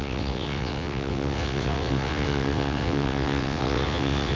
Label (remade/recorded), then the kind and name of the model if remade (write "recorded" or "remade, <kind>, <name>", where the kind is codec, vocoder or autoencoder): remade, vocoder, WaveNeXt